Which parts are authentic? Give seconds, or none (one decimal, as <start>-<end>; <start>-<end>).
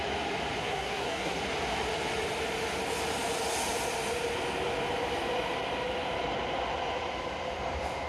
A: 0.0-0.6; 1.4-8.1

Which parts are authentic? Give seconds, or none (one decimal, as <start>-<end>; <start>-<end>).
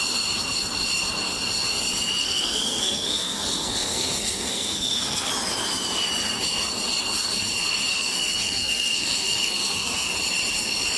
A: 0.0-2.2; 5.3-7.9; 10.1-11.0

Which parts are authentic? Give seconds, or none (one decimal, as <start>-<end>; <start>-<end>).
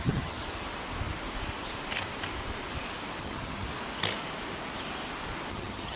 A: 0.4-3.2; 3.7-5.5